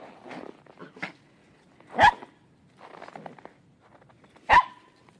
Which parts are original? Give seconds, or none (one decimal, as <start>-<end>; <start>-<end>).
0.0-5.2